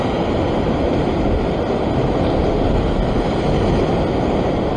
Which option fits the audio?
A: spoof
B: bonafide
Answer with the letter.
B